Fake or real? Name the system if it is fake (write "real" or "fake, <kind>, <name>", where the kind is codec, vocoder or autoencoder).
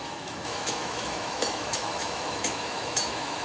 fake, autoencoder, DAC-VAE